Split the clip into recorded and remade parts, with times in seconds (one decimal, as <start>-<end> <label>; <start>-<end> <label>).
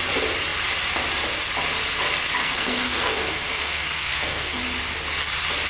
0.0-2.4 recorded; 2.4-4.6 remade; 4.6-5.7 recorded